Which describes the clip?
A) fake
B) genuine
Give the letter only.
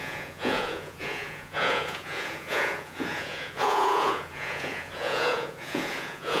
A